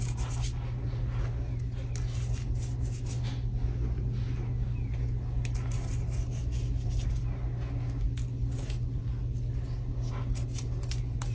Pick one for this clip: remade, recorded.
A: recorded